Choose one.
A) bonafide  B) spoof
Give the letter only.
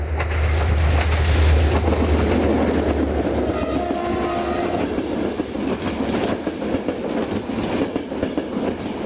A